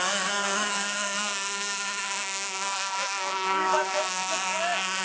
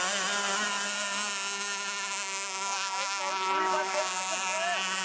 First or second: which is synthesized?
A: first